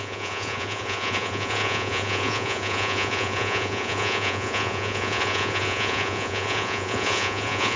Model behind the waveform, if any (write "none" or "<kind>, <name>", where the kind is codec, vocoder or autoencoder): vocoder, Vocos